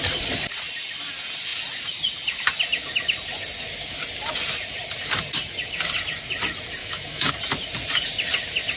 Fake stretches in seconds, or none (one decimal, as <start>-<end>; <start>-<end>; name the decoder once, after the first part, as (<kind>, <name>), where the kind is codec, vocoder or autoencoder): 6.8-7.3 (autoencoder, DAC-VAE)